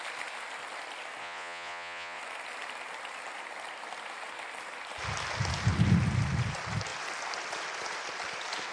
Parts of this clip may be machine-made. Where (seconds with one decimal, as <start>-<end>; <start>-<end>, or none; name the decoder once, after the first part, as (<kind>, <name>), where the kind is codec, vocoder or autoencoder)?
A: 1.2-2.2 (vocoder, Vocos)